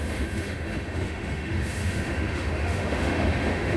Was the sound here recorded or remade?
remade